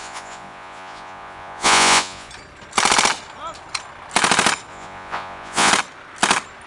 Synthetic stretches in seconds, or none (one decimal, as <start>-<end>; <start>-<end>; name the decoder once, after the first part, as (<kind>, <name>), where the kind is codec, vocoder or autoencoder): 0.0-2.3 (vocoder, Vocos); 4.7-5.7

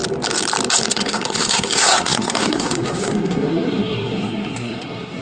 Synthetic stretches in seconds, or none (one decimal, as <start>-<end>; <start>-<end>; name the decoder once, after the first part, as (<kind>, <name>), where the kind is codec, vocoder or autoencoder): 0.9-5.2 (codec, SNAC)

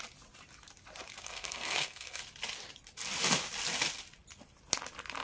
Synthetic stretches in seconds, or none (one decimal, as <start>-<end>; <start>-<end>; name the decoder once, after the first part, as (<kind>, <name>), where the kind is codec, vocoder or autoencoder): 1.2-2.2 (codec, SNAC)

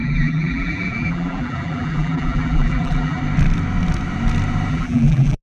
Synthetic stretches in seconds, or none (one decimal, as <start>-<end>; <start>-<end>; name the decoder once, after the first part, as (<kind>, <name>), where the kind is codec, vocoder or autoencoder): 0.0-3.2 (vocoder, BigVGAN v2); 4.7-5.4

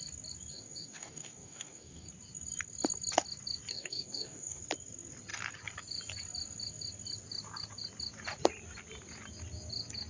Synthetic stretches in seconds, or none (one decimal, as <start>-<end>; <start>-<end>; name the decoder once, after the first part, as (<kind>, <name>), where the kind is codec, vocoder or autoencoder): 0.5-2.1 (codec, DAC); 3.7-4.6

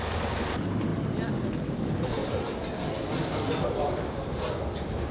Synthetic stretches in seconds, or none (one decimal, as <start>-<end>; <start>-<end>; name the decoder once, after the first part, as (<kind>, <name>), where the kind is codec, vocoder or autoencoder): none

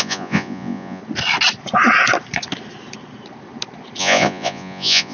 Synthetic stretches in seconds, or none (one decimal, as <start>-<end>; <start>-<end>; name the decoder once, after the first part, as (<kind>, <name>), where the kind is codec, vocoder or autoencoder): 0.0-1.0 (vocoder, Vocos); 4.0-5.1

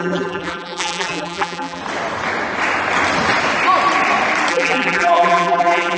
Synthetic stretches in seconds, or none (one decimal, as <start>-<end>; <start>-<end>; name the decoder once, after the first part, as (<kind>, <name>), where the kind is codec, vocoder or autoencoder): 0.0-1.8 (vocoder, BigVGAN v2); 4.5-6.0